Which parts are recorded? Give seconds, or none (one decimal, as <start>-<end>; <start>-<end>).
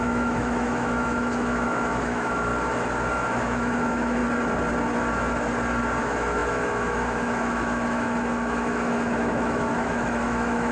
2.5-3.1; 4.2-6.0